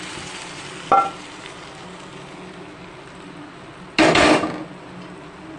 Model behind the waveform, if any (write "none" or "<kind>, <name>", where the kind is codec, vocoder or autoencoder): none